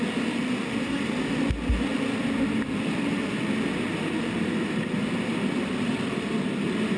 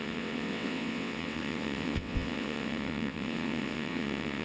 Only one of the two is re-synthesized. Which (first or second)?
second